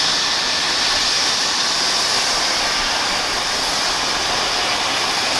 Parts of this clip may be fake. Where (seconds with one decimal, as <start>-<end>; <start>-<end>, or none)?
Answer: none